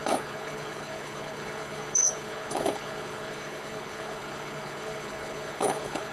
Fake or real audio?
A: fake